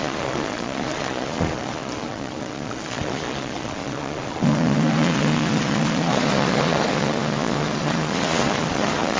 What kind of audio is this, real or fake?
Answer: fake